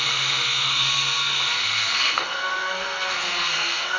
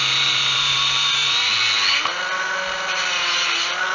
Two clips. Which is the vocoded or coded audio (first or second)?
first